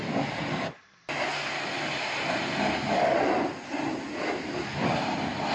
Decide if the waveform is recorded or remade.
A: recorded